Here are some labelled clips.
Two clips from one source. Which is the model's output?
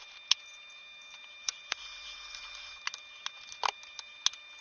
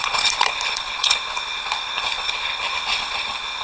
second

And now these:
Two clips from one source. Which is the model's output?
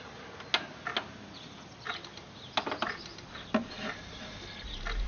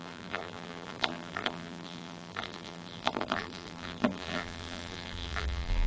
second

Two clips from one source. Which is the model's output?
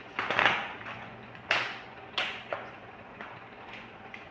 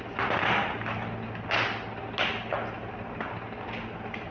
first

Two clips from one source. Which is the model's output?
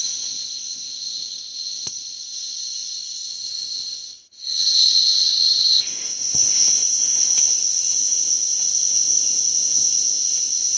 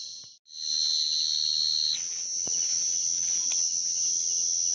first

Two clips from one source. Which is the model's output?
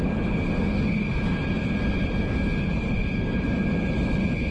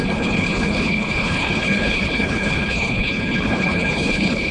second